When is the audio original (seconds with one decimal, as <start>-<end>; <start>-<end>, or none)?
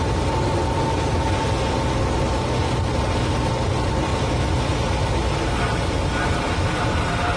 0.0-7.4